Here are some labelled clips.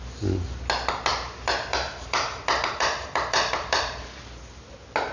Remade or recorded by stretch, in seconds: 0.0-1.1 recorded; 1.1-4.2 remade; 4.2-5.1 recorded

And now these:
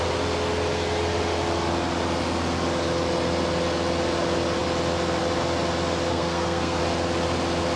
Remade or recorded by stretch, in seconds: 0.0-6.1 recorded; 6.1-6.8 remade; 6.8-7.8 recorded